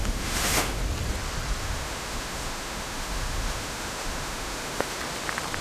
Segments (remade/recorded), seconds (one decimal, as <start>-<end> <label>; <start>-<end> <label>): 0.0-0.8 remade; 0.8-1.6 recorded; 1.6-5.0 remade; 5.0-5.6 recorded